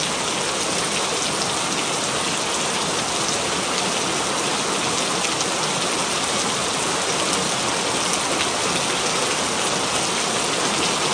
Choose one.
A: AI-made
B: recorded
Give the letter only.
B